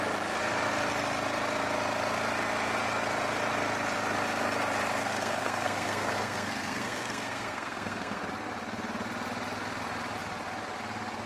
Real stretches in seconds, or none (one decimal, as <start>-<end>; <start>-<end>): 0.0-5.0; 8.2-11.3